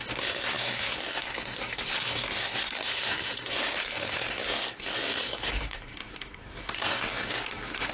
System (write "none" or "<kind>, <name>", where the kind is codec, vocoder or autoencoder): codec, SNAC